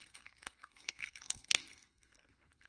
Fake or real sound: fake